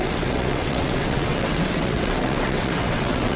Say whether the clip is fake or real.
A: fake